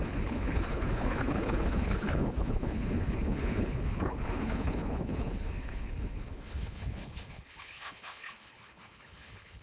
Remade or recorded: remade